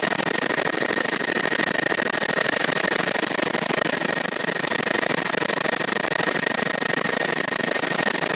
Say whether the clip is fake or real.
fake